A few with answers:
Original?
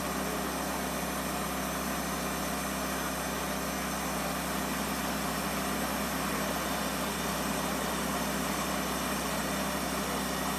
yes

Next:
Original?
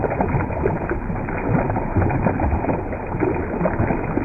yes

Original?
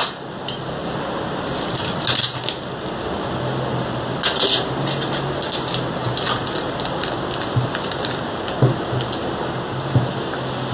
yes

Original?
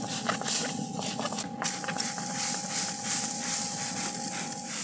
yes